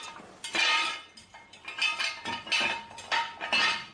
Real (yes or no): yes